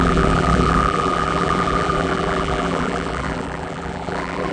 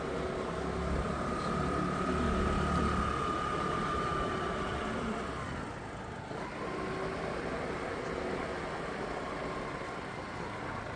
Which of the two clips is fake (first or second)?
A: first